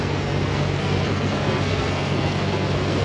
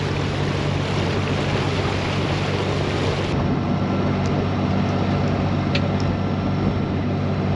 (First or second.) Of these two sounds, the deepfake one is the first